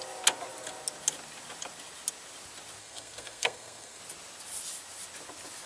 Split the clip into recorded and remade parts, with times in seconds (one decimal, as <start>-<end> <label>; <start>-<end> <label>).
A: 0.0-2.8 recorded; 2.8-4.0 remade; 4.0-5.7 recorded